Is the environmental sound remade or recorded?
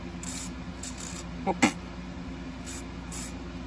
recorded